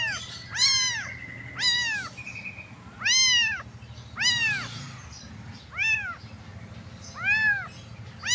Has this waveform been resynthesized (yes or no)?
no